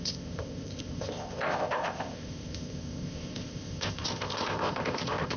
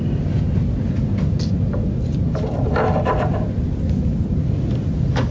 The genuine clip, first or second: second